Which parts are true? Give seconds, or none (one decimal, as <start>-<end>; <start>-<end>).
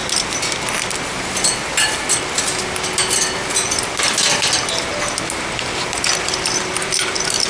0.0-7.5